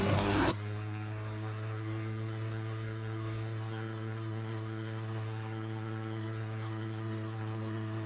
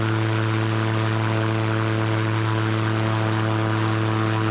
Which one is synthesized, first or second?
first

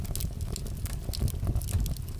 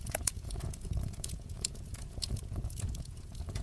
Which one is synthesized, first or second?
second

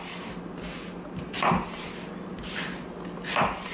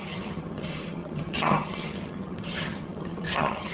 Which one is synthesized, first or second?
second